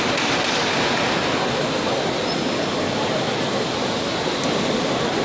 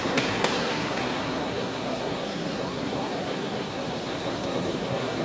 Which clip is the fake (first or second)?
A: second